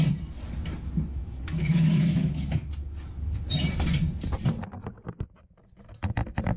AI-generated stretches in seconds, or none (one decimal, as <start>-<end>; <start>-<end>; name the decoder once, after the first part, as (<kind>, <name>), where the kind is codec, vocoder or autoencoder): 1.1-2.7 (autoencoder, DAC-VAE)

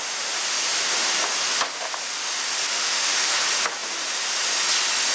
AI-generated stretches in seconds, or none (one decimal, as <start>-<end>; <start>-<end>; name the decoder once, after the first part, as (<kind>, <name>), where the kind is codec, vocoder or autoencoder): 2.7-3.4 (autoencoder, DAC-VAE)

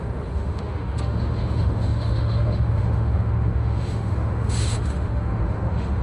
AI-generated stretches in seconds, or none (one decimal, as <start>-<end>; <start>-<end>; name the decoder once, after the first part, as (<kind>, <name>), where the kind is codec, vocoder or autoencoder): 0.0-6.0 (autoencoder, DAC-VAE)

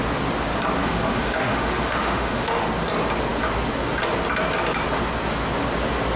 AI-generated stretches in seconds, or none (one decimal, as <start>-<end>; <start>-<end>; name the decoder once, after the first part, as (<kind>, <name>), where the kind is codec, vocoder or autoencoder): 0.8-2.6 (autoencoder, DAC-VAE)